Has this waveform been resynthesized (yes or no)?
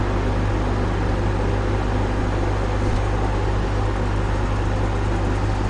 no